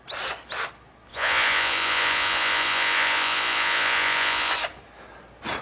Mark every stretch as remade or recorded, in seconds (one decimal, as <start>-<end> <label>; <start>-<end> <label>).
0.0-1.1 recorded; 1.1-4.5 remade; 4.5-5.6 recorded